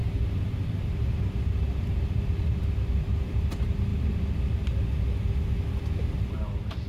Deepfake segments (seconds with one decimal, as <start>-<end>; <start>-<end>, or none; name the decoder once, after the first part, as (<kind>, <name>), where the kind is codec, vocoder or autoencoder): 0.5-3.9 (vocoder, BigVGAN v2); 6.1-6.9

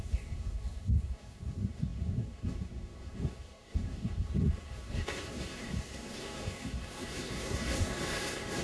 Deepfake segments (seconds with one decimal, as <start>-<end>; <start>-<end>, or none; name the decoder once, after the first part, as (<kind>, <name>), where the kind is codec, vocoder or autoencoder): 0.0-8.6 (codec, SNAC)

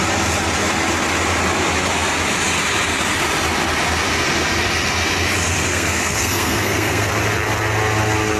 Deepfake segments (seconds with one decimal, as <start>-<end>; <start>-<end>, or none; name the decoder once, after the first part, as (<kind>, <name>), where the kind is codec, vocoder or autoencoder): 5.6-7.1 (codec, SNAC)

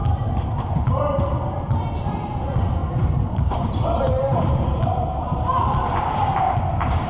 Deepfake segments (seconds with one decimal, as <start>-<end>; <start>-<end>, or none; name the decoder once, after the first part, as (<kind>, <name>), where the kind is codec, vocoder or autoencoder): 0.0-1.0 (vocoder, BigVGAN v2); 2.8-6.4

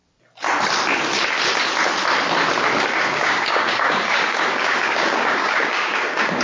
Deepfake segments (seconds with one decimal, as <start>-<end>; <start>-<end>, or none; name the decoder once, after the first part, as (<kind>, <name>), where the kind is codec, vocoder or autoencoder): 2.9-6.4 (codec, DAC)